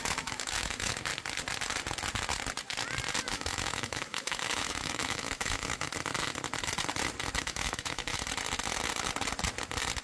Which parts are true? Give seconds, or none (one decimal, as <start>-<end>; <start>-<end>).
1.1-3.3; 5.9-7.4; 8.1-10.0